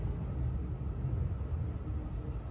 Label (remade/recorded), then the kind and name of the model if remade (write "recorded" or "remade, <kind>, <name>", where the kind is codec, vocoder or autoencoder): recorded